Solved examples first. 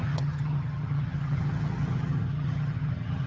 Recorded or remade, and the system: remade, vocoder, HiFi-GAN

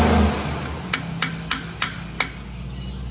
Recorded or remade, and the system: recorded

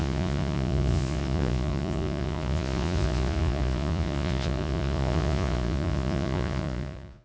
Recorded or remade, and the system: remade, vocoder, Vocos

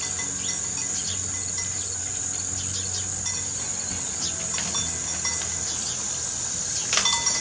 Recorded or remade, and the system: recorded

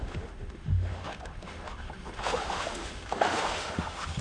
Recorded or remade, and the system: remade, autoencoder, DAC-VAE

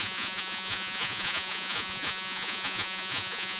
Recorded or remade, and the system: remade, vocoder, Vocos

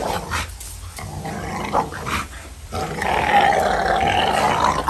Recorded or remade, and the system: recorded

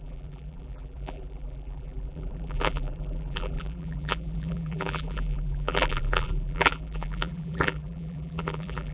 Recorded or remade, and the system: remade, vocoder, BigVGAN v2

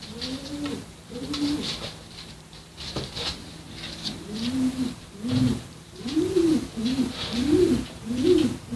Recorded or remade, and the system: remade, vocoder, BigVGAN v2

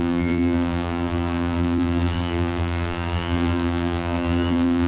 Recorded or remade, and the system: remade, vocoder, BigVGAN v2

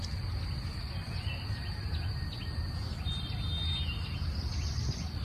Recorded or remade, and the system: recorded